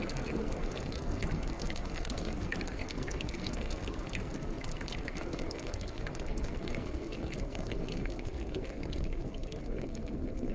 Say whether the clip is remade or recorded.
remade